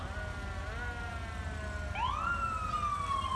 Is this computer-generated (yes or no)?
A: no